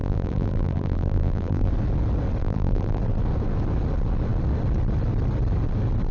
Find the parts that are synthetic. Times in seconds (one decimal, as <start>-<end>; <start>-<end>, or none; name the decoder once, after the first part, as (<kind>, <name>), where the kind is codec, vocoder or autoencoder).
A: 0.0-1.7 (vocoder, BigVGAN v2); 2.4-3.0

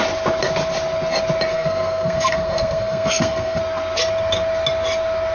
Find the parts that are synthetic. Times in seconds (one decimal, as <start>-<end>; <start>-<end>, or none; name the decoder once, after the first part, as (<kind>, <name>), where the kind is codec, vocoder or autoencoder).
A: 1.5-3.6 (codec, SNAC)

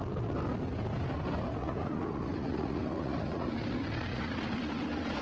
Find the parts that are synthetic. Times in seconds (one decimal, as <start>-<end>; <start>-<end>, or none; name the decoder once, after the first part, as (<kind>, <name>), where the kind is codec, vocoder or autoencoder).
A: 1.6-3.5 (vocoder, Vocos); 4.1-5.2

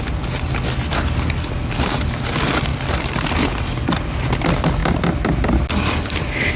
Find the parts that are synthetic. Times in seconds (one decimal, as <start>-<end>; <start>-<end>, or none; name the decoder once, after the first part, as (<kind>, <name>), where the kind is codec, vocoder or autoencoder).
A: 2.7-3.3 (vocoder, BigVGAN v2); 4.8-5.4

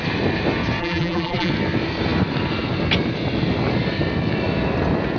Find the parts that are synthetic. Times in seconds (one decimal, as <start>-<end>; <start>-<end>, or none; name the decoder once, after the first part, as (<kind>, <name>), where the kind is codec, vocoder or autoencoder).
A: 0.8-1.5 (vocoder, BigVGAN v2)